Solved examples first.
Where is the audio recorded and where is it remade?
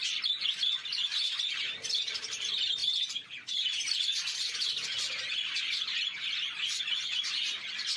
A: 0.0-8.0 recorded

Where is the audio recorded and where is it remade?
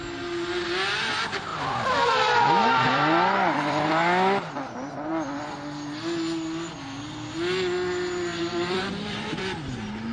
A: 0.0-1.5 recorded; 1.5-3.9 remade; 3.9-8.3 recorded; 8.3-9.4 remade; 9.4-10.1 recorded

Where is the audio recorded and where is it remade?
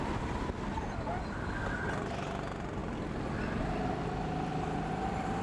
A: 0.0-5.4 recorded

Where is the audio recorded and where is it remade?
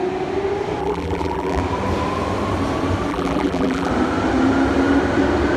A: 0.0-0.8 recorded; 0.8-1.6 remade; 1.6-3.1 recorded; 3.1-3.9 remade; 3.9-5.6 recorded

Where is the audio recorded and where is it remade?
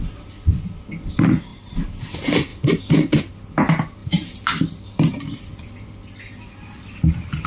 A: 0.0-1.5 recorded; 1.5-2.0 remade; 2.0-2.5 recorded; 2.5-3.3 remade; 3.3-4.0 recorded; 4.0-5.2 remade; 5.2-7.5 recorded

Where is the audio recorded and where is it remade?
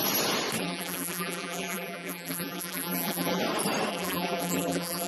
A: 0.0-0.6 recorded; 0.6-3.4 remade; 3.4-3.9 recorded; 3.9-5.1 remade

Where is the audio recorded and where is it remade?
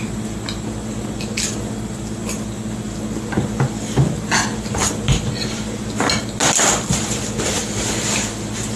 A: 0.0-7.6 recorded; 7.6-8.2 remade; 8.2-8.8 recorded